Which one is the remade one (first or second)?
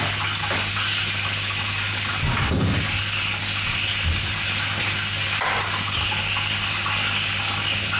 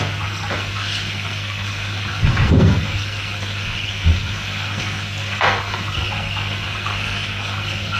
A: second